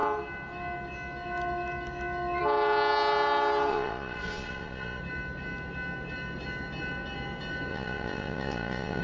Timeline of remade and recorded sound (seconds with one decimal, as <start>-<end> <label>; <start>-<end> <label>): 0.0-3.7 recorded; 3.7-5.0 remade; 5.0-7.7 recorded; 7.7-9.0 remade